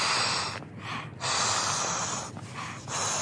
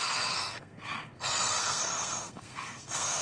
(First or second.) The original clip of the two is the first